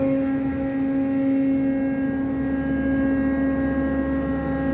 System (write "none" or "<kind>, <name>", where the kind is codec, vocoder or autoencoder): none